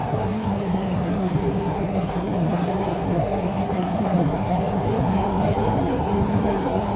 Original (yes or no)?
no